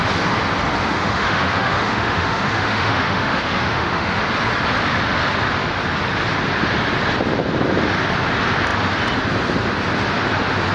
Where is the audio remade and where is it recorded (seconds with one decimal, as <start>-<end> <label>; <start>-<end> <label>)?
0.0-0.8 recorded; 0.8-4.2 remade; 4.2-10.7 recorded